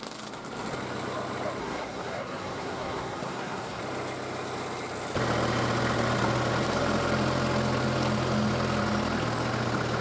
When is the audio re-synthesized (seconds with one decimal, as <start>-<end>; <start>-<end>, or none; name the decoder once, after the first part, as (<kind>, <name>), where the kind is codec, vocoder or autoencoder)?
1.6-3.8 (codec, SNAC)